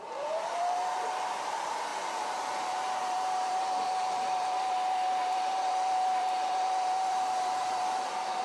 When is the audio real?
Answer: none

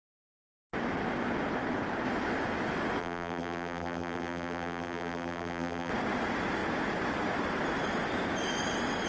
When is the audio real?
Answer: 0.0-3.0; 5.9-9.1